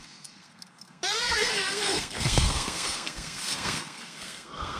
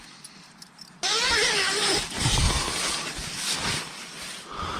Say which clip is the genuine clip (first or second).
second